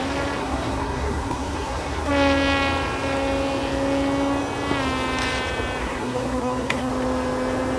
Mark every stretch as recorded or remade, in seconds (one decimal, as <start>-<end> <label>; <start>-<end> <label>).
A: 0.0-0.4 recorded; 0.4-2.1 remade; 2.1-5.8 recorded; 5.8-6.9 remade; 6.9-7.8 recorded